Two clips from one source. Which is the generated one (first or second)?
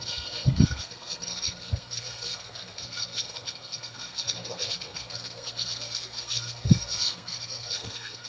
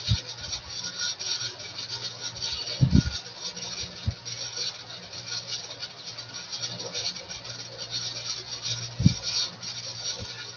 first